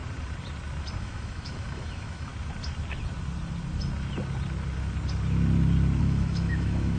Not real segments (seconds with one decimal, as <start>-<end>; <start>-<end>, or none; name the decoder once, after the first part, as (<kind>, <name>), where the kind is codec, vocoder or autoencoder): 1.0-2.3 (autoencoder, DAC-VAE); 6.0-7.0